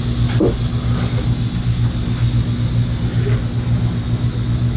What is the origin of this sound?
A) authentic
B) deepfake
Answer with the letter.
A